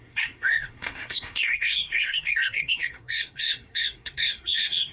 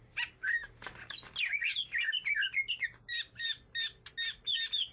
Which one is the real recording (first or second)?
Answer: second